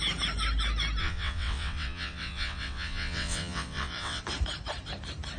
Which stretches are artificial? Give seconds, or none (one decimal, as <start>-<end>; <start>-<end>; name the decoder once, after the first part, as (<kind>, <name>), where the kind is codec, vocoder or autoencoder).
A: 1.0-4.2 (vocoder, WaveNeXt)